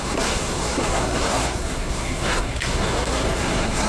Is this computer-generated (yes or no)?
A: yes